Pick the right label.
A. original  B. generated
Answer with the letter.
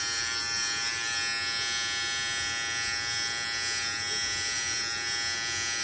A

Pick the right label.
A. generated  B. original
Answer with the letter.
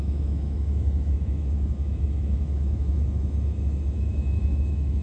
A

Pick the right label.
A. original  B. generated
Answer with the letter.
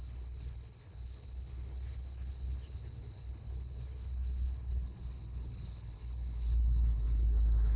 B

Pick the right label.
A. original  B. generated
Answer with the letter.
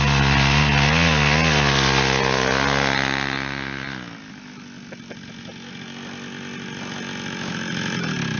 A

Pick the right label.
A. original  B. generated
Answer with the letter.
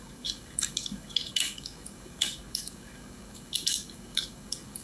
B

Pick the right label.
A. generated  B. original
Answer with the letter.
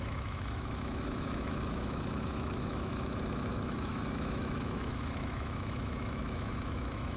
A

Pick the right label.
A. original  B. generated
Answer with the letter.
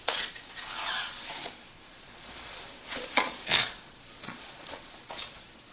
B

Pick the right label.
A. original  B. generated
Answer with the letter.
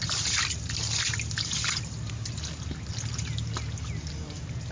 A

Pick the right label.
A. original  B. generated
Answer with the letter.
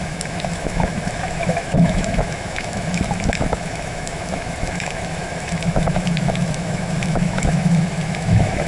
B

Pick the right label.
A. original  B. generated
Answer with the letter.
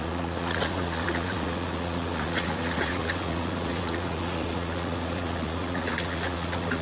B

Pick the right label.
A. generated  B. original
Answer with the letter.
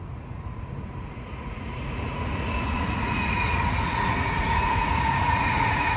A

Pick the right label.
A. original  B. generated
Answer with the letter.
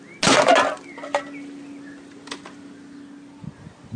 A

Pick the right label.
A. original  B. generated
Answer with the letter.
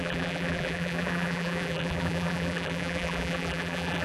B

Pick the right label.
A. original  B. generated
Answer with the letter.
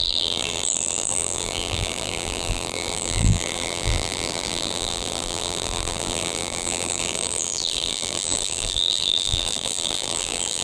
B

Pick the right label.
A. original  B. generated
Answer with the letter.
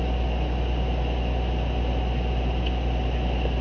A